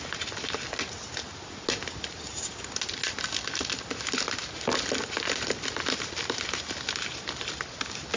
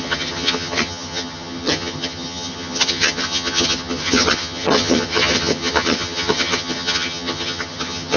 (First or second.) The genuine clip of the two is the first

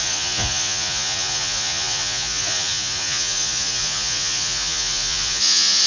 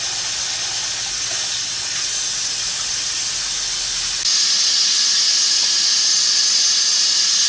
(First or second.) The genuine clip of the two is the second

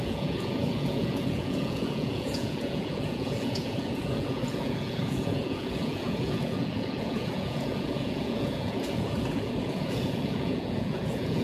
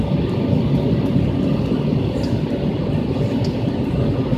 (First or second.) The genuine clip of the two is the second